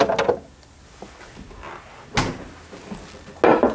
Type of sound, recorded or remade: recorded